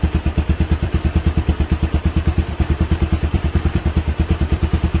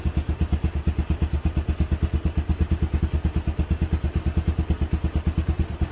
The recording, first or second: second